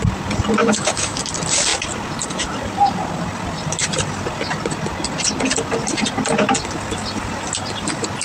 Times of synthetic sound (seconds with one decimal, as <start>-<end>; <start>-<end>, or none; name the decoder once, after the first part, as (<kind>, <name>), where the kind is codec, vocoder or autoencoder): 0.6-1.2 (autoencoder, DAC-VAE)